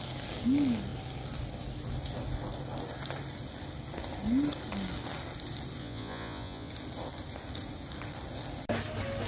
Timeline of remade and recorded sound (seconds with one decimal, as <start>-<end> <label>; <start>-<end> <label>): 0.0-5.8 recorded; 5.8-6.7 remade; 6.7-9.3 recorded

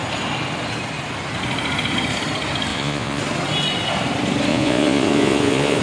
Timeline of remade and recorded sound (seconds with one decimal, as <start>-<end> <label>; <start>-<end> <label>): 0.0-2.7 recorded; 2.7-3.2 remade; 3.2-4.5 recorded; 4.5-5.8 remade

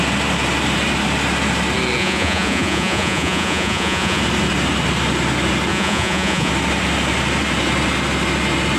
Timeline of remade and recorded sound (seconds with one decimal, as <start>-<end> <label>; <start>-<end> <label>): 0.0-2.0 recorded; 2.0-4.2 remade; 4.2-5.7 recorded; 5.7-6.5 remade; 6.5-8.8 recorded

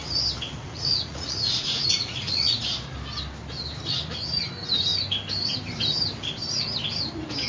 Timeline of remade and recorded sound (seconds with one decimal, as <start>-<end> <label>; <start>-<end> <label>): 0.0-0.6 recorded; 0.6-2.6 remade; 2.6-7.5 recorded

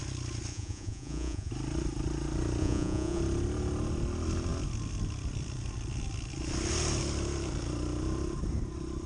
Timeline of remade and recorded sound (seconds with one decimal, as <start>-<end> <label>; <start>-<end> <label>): 0.0-0.5 recorded; 0.5-1.5 remade; 1.5-2.6 recorded; 2.6-3.2 remade; 3.2-9.1 recorded

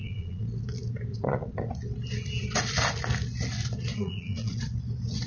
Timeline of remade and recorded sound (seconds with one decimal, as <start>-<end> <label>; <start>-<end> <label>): 0.0-0.6 remade; 0.6-1.1 recorded; 1.1-1.7 remade; 1.7-3.9 recorded; 3.9-4.7 remade; 4.7-5.3 recorded

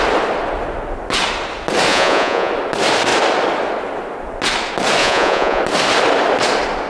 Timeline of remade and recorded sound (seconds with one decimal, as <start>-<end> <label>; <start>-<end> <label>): 0.0-1.9 recorded; 1.9-2.5 remade; 2.5-5.0 recorded; 5.0-5.6 remade; 5.6-6.9 recorded

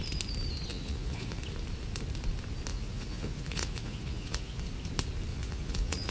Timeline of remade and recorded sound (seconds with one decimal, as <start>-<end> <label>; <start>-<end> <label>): 0.0-0.7 recorded; 0.7-1.4 remade; 1.4-2.7 recorded; 2.7-4.6 remade; 4.6-5.3 recorded; 5.3-6.1 remade